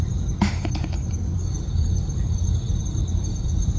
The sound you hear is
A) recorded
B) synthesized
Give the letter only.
A